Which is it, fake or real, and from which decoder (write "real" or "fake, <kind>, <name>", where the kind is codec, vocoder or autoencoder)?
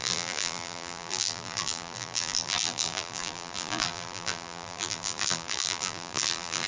fake, vocoder, BigVGAN v2